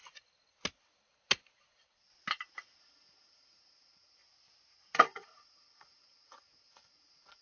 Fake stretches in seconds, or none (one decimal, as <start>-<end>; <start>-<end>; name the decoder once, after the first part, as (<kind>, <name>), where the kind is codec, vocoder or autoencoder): 2.8-4.2 (vocoder, Vocos); 5.0-7.4